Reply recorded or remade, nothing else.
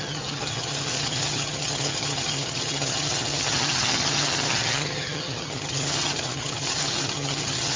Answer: remade